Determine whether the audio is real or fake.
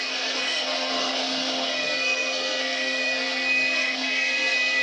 fake